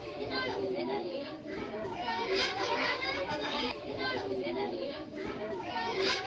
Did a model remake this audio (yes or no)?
yes